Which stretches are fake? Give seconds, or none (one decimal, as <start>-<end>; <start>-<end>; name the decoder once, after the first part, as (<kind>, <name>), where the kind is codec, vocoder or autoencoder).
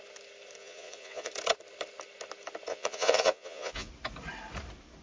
0.6-1.3 (vocoder, Vocos); 2.7-3.9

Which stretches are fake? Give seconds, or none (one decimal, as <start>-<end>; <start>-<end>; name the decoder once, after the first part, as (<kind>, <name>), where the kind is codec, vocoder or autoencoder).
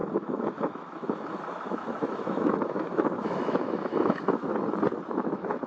0.0-4.5 (autoencoder, DAC-VAE); 5.1-5.7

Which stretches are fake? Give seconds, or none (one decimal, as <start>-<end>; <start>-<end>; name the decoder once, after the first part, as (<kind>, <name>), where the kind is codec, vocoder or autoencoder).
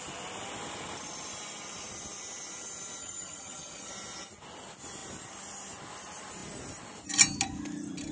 3.0-3.9 (vocoder, HiFi-GAN)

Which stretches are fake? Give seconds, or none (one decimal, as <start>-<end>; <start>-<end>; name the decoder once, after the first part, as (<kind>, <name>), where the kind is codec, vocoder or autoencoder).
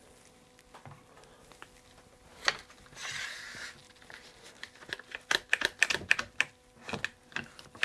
none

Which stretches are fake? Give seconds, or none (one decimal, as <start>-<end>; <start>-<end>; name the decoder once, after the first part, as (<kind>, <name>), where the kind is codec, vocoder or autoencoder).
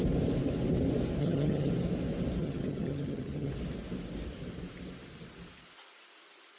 1.2-1.7 (vocoder, HiFi-GAN); 2.4-3.5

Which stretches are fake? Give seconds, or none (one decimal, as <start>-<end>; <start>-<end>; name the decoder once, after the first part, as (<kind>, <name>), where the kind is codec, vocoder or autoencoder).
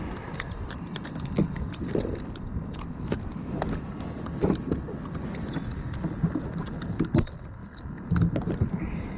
none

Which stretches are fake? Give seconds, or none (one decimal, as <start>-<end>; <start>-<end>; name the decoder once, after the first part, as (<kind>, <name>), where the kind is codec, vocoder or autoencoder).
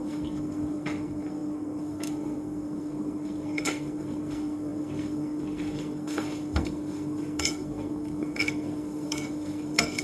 0.0-10.0 (codec, SNAC)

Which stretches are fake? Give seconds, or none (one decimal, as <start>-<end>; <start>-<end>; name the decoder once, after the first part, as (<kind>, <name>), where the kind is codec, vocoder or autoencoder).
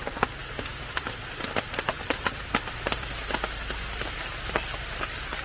0.4-3.1 (vocoder, BigVGAN v2)